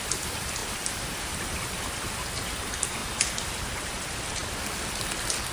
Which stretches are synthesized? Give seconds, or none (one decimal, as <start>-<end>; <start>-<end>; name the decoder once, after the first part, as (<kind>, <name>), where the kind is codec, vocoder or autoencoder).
0.0-3.0 (vocoder, BigVGAN v2); 3.6-5.5